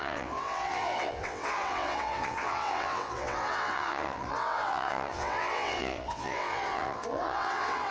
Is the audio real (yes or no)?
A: no